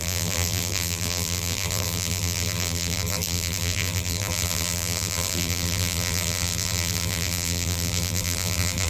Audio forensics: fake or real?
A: fake